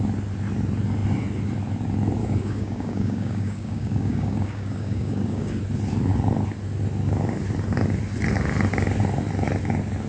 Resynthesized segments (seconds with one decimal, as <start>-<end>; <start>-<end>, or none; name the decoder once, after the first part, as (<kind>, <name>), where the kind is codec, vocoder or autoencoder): 2.2-5.6 (codec, DAC)

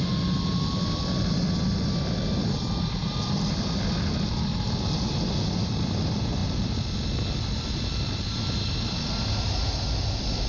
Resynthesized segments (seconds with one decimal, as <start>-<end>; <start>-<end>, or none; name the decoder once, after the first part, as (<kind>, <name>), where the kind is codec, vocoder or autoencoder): none